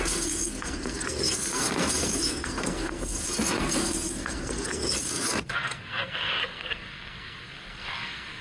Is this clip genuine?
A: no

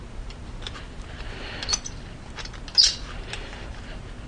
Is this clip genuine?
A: yes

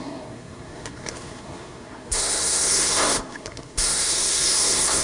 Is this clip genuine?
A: no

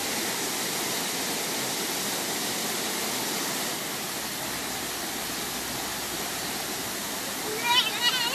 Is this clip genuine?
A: yes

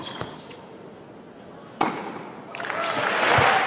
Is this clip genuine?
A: yes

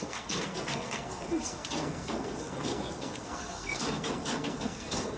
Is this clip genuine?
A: no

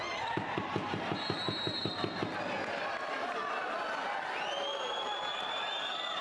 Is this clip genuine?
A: yes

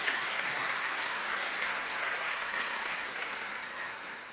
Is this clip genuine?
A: no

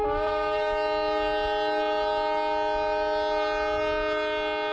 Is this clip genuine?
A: yes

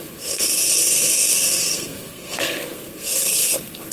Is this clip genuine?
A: no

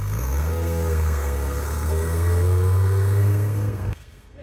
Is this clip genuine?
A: no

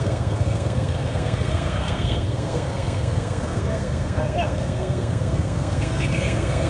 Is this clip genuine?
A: no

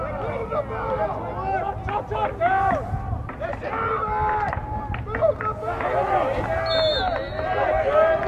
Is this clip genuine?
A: yes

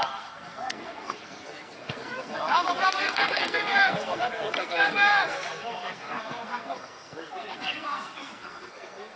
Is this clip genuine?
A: no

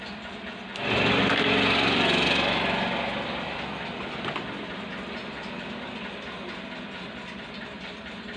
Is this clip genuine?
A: yes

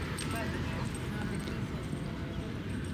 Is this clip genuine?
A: yes